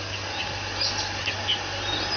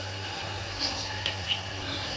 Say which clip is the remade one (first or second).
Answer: second